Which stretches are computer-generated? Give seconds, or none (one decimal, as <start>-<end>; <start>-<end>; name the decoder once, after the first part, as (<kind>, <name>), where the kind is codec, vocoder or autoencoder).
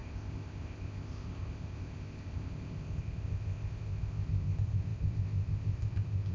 0.0-6.3 (codec, ZipCodec)